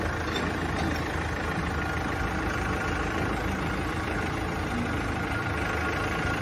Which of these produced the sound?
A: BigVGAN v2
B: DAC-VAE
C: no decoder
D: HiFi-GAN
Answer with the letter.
C